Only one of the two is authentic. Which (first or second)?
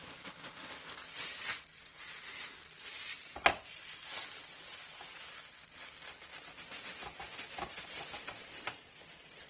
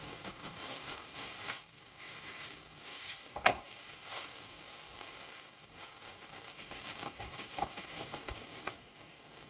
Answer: first